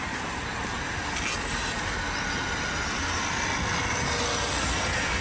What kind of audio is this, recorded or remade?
recorded